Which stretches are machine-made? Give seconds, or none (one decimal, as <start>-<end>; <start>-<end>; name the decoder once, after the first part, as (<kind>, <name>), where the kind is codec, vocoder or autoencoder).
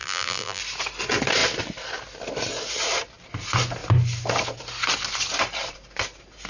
0.0-0.6 (vocoder, BigVGAN v2)